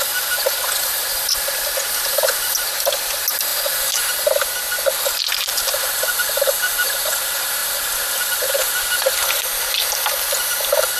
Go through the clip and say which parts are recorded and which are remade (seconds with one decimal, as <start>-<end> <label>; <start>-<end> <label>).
0.0-11.0 recorded